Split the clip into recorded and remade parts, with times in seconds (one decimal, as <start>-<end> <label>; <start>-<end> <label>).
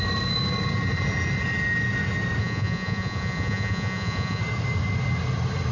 0.0-2.4 recorded; 2.4-4.4 remade; 4.4-5.7 recorded